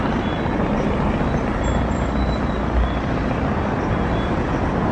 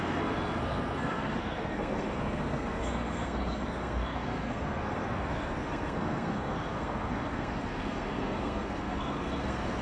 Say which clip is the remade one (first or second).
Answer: second